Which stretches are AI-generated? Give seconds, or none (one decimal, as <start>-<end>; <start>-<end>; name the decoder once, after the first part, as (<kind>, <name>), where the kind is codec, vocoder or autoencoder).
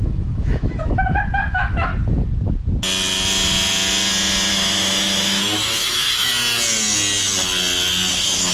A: 0.0-1.9 (autoencoder, DAC-VAE); 4.5-6.3; 8.1-8.5